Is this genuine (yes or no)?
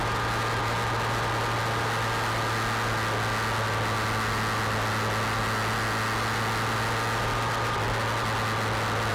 yes